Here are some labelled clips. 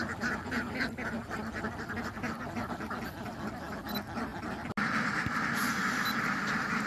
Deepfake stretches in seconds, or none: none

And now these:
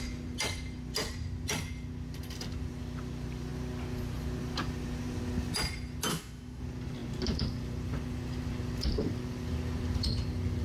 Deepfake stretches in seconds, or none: 6.1-6.6 (autoencoder, DAC-VAE)

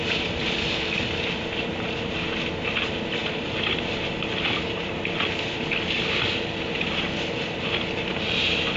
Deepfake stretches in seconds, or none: none